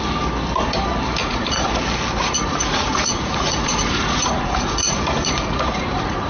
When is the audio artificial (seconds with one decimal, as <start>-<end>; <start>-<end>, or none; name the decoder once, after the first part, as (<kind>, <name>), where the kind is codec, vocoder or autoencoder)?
1.2-1.8 (vocoder, Vocos); 2.2-6.3